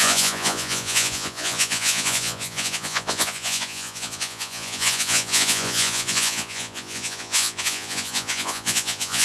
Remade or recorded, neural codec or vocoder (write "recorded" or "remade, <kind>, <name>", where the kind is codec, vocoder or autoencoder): remade, vocoder, Vocos